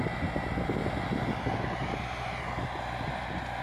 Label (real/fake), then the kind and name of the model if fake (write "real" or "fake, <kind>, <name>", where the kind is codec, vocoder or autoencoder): real